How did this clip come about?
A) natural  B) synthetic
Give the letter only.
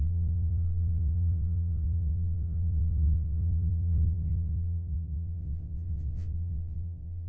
B